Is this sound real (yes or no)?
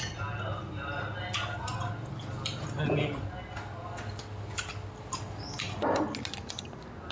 yes